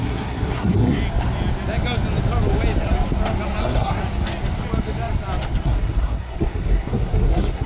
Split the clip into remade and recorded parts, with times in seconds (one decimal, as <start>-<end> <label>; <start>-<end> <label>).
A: 0.0-1.0 remade; 1.0-3.6 recorded; 3.6-4.0 remade; 4.0-5.6 recorded; 5.6-7.7 remade